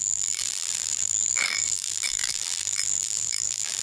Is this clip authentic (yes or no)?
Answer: no